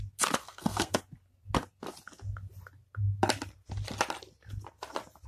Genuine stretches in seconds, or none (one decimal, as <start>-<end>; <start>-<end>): 0.0-0.4; 1.0-5.3